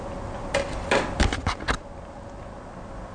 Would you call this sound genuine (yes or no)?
yes